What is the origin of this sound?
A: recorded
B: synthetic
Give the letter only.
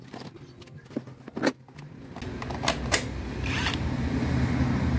A